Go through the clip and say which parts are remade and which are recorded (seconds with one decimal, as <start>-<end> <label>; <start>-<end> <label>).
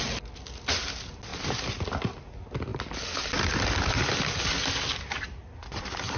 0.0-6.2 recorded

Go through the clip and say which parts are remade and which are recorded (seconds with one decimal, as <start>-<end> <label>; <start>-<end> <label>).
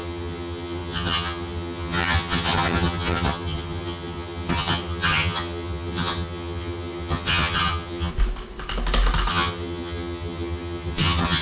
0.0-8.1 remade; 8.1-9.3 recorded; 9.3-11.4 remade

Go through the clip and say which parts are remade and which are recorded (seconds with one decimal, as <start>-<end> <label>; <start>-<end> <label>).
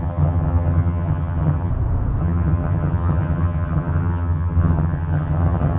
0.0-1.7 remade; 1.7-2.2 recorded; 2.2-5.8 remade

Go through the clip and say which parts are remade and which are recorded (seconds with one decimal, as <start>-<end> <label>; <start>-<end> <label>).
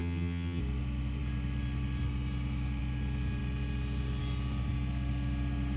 0.0-0.6 remade; 0.6-5.8 recorded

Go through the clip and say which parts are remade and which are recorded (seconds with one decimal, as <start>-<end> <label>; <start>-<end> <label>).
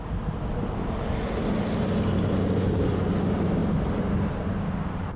0.0-5.2 recorded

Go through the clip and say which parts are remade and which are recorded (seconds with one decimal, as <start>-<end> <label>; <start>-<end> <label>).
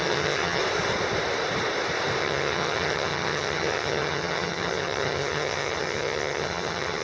0.0-0.6 remade; 0.6-2.2 recorded; 2.2-7.0 remade